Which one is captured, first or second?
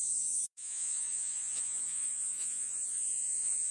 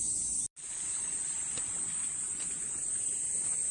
second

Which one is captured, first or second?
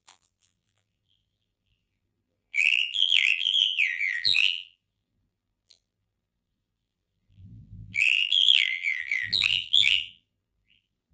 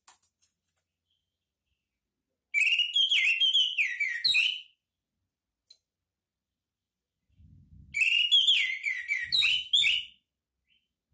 second